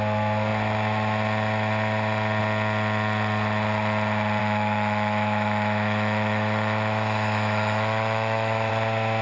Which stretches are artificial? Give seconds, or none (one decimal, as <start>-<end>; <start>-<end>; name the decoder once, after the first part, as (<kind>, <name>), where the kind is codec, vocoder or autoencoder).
4.4-8.7 (autoencoder, DAC-VAE)

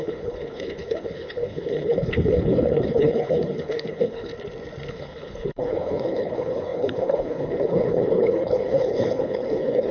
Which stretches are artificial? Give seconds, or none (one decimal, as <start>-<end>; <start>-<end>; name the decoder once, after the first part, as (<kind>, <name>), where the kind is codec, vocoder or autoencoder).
0.0-4.3 (codec, HILCodec); 4.9-9.9

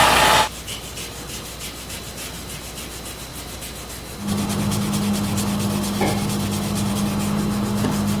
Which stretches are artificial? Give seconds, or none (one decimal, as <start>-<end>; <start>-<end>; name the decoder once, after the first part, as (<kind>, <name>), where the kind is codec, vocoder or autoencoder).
none

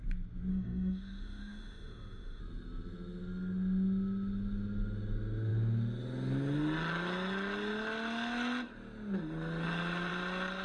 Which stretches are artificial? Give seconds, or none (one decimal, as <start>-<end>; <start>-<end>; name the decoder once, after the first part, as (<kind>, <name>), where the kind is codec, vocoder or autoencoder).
0.5-2.4 (autoencoder, DAC-VAE)